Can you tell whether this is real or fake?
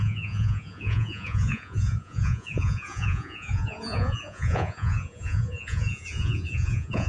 fake